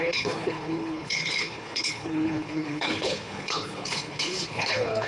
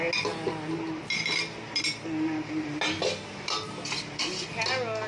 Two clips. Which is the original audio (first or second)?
second